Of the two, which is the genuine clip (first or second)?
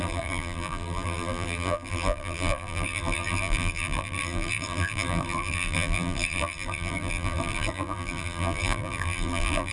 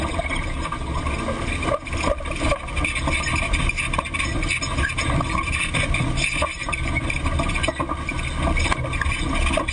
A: second